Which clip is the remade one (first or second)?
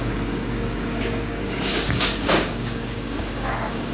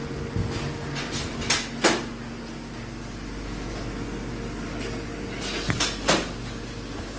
first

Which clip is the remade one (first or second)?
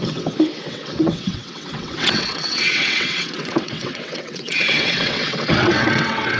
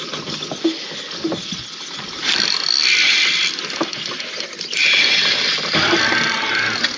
first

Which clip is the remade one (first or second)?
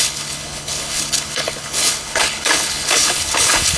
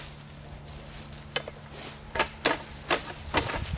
first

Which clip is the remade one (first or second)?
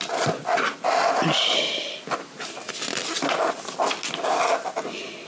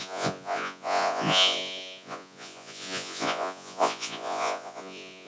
second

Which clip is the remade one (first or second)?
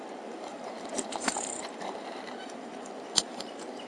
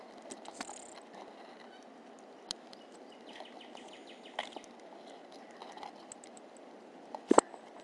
first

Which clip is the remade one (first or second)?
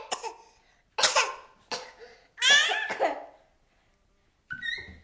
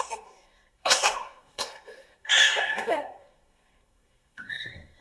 second